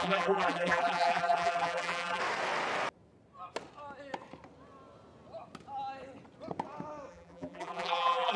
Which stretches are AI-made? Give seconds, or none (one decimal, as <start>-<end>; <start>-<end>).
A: 0.0-2.2; 7.1-8.4

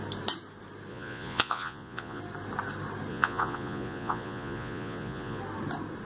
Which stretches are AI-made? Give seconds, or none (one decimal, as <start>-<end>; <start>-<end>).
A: 0.9-2.2; 3.1-5.4

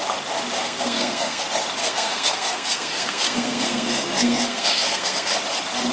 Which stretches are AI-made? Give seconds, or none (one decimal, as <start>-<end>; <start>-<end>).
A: 0.6-1.4; 1.8-5.3

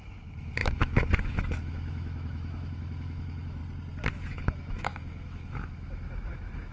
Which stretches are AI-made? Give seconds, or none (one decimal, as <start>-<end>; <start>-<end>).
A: 0.0-3.6; 4.3-6.7

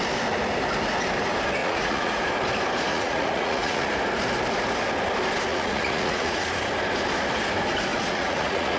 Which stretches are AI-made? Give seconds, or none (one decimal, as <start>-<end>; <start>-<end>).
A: 1.6-2.2; 2.9-3.9; 5.5-6.4; 7.9-8.8

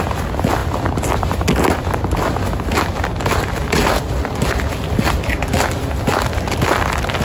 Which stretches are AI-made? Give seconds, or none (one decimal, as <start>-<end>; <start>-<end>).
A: none

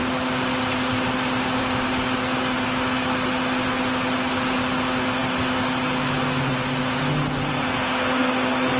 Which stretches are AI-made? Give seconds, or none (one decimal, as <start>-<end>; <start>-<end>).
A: none

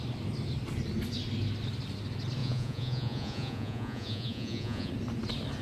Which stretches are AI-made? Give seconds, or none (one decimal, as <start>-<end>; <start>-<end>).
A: 2.4-4.9